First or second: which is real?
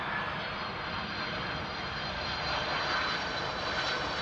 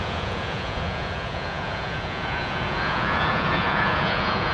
first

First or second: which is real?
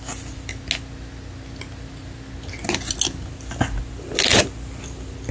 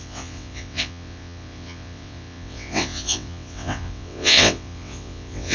first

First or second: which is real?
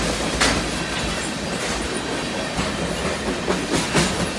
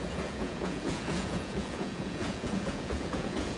first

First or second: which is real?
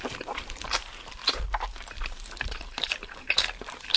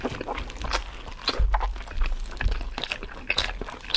second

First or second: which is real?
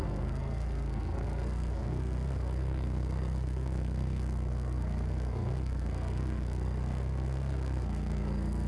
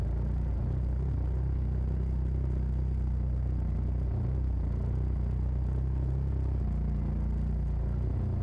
second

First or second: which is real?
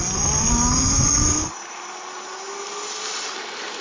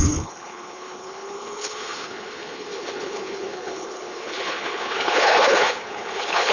first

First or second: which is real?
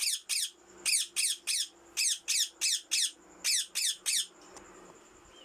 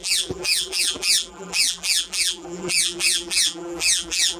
first